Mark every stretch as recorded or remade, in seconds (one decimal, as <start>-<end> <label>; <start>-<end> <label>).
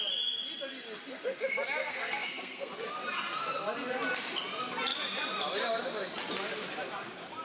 0.0-1.8 recorded; 1.8-2.7 remade; 2.7-7.4 recorded